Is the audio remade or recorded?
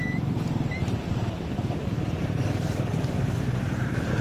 remade